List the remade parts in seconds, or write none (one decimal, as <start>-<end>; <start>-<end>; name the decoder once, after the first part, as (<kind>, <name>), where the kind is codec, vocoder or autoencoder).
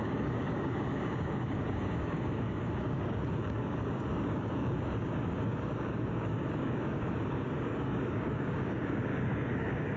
0.0-10.0 (codec, DAC)